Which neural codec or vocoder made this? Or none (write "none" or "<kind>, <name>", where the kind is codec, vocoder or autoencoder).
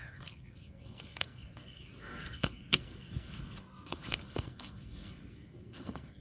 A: codec, SNAC